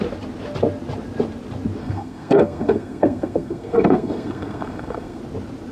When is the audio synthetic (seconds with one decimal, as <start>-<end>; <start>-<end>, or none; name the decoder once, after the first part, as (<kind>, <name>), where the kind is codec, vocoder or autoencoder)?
1.8-5.2 (codec, SNAC)